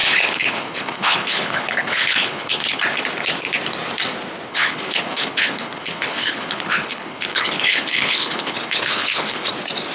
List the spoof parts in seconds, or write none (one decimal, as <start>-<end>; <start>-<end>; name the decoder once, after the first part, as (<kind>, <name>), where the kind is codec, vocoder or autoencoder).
0.0-2.8 (codec, HILCodec); 4.5-9.5